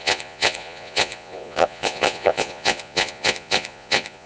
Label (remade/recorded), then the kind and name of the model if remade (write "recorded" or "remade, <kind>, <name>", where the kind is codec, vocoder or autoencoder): remade, vocoder, Vocos